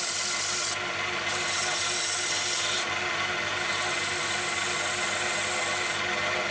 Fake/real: real